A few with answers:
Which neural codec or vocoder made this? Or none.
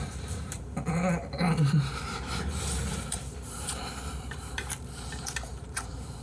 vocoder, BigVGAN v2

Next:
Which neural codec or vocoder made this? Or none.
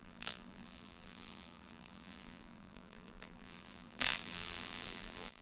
vocoder, BigVGAN v2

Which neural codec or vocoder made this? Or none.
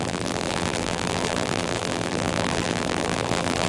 vocoder, BigVGAN v2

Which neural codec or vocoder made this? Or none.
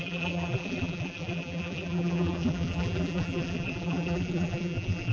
vocoder, BigVGAN v2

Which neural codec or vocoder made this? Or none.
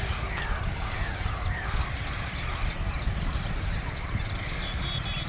vocoder, BigVGAN v2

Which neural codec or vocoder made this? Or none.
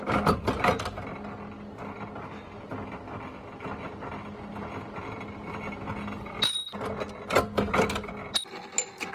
none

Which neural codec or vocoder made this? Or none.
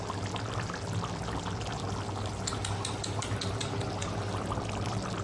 none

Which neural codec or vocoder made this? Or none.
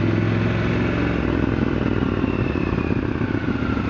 none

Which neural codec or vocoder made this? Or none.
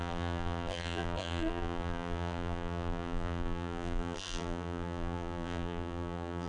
vocoder, BigVGAN v2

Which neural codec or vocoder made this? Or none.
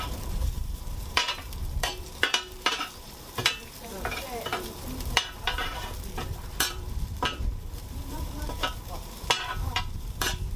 vocoder, BigVGAN v2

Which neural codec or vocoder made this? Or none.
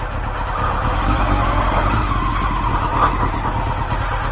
none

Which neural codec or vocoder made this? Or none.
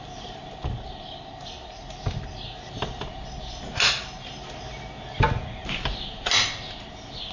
none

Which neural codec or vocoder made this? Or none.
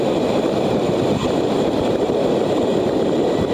vocoder, BigVGAN v2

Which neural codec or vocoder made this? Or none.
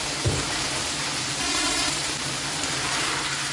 vocoder, BigVGAN v2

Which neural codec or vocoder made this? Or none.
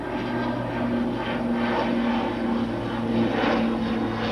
none